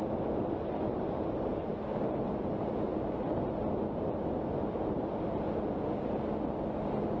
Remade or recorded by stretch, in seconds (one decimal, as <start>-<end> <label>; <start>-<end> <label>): 0.0-7.2 recorded